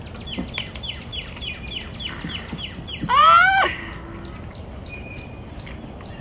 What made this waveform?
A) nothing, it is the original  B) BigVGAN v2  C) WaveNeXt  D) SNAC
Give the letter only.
A